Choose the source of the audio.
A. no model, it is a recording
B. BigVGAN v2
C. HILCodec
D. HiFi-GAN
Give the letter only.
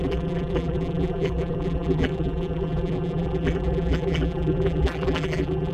B